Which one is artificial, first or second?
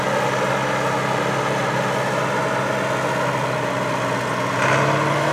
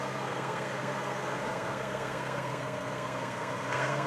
second